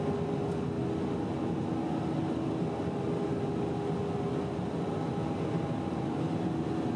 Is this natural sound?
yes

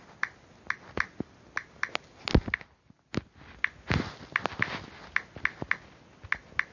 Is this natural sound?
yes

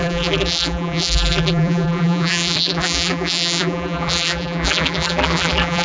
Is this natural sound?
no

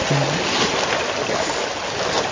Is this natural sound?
yes